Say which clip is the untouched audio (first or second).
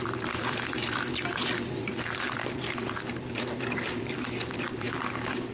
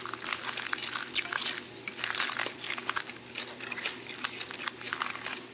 second